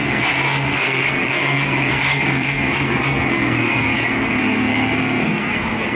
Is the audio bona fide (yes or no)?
no